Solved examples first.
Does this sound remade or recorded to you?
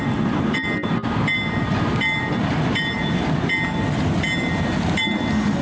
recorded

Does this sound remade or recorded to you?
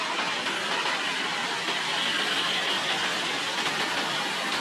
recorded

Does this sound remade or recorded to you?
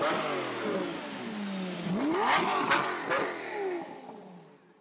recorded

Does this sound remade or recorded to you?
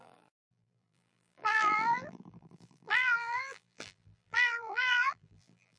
remade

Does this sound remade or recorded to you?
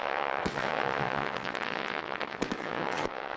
remade